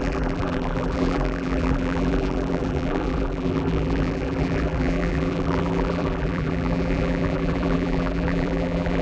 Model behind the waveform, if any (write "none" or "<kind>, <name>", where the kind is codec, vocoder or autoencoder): vocoder, BigVGAN v2